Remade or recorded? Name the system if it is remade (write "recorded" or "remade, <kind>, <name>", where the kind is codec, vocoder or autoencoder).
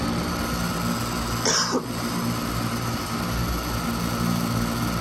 recorded